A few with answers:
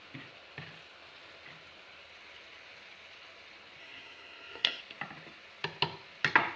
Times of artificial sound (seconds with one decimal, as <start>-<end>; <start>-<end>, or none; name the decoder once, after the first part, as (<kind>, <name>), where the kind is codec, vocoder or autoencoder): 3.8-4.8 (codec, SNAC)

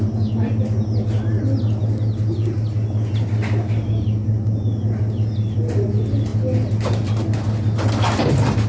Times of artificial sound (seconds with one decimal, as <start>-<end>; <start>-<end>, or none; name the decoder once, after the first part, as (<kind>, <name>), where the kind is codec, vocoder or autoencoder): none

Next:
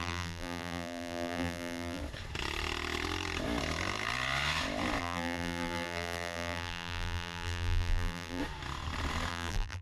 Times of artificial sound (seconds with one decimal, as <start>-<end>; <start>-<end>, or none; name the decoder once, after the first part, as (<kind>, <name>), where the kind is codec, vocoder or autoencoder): 0.0-2.0 (vocoder, BigVGAN v2); 5.0-8.4; 9.3-9.8

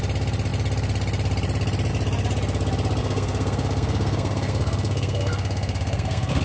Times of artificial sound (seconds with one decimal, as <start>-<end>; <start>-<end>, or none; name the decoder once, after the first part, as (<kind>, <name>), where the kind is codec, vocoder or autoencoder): 3.0-6.4 (codec, SNAC)